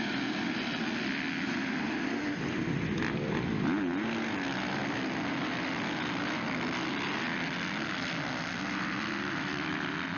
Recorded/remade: recorded